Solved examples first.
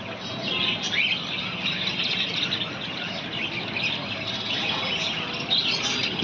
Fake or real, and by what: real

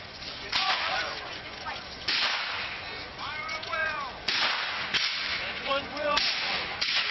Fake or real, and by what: fake, vocoder, Vocos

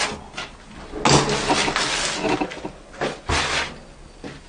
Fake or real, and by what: real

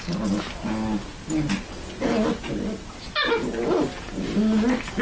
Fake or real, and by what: real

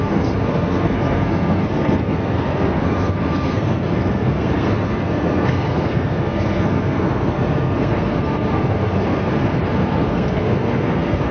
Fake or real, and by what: fake, codec, SNAC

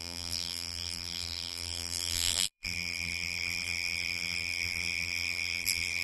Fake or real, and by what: fake, vocoder, BigVGAN v2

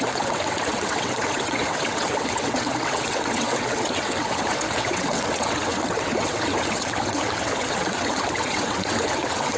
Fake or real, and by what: fake, vocoder, WaveNeXt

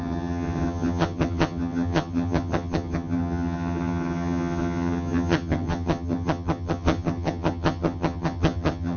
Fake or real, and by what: fake, vocoder, HiFi-GAN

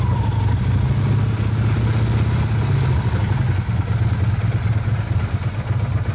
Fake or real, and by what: real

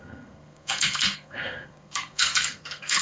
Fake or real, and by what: fake, codec, SNAC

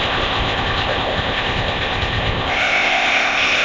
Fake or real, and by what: fake, codec, ZipCodec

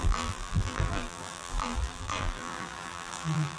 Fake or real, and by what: fake, vocoder, BigVGAN v2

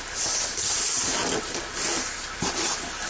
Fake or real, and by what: real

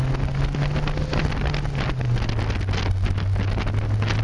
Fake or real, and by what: real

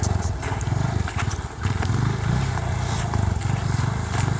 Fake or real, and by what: real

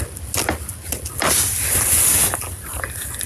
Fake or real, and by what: real